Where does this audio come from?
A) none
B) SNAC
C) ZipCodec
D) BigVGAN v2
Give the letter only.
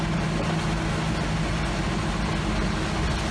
A